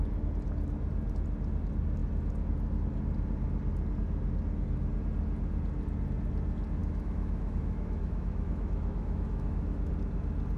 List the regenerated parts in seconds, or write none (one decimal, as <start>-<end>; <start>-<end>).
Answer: 6.8-9.9